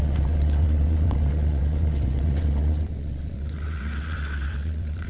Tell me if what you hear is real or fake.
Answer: fake